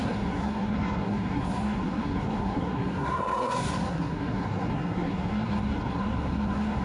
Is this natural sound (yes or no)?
no